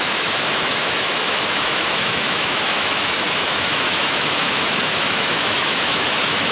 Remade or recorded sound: remade